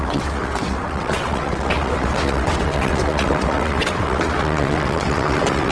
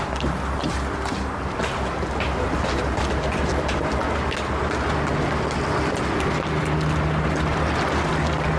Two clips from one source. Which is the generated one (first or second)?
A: first